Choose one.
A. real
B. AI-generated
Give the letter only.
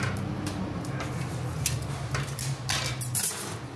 A